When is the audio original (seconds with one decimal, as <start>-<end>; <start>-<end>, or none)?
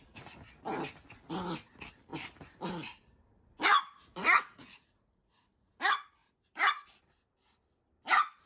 0.0-4.2; 5.7-8.5